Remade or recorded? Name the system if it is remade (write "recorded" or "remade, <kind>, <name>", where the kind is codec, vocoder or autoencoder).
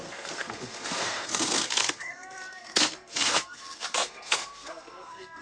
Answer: remade, codec, SNAC